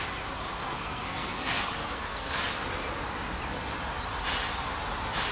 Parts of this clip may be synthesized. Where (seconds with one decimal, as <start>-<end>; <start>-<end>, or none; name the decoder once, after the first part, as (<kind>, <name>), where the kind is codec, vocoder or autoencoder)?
0.7-2.4 (codec, SNAC)